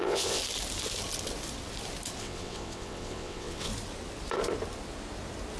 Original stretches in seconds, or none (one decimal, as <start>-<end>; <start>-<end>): 0.4-2.2; 3.7-5.6